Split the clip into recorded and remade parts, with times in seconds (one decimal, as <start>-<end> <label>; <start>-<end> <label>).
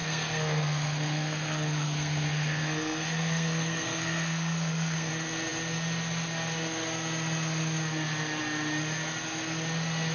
0.0-5.1 remade; 5.1-10.1 recorded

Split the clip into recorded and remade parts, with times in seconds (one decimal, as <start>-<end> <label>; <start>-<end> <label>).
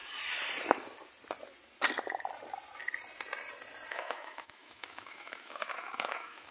0.0-3.9 recorded; 3.9-6.5 remade